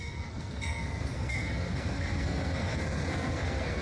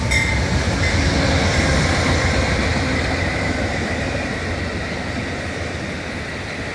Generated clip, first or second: first